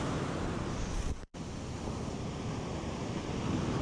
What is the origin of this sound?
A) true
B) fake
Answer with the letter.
B